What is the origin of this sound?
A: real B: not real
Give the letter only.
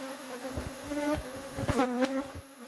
B